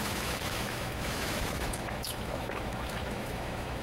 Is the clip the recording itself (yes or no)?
no